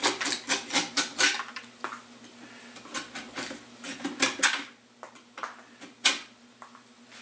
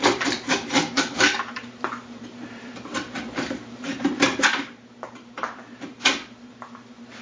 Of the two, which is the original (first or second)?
first